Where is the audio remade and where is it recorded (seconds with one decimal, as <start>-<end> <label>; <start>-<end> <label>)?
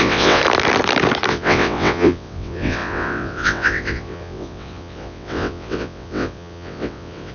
0.0-0.4 remade; 0.4-1.3 recorded; 1.3-7.3 remade